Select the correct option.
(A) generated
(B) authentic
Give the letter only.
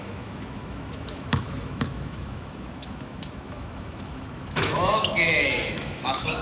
A